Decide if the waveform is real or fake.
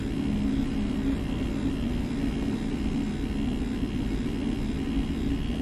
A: real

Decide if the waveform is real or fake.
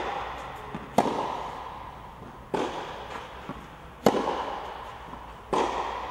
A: real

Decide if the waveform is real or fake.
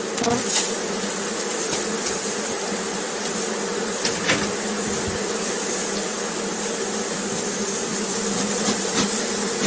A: real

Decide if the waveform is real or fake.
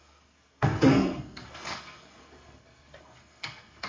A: fake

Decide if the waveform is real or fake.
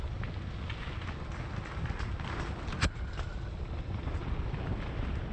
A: real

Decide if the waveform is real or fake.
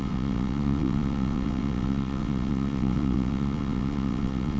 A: fake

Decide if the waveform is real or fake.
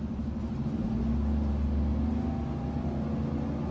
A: real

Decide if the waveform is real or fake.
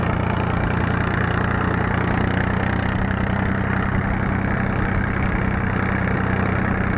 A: real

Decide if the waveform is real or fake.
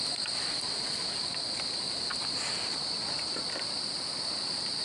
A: real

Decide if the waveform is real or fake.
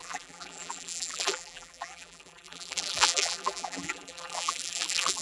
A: fake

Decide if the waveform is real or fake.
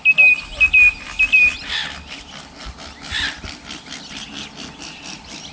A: real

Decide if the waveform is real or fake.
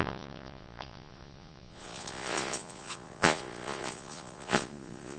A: fake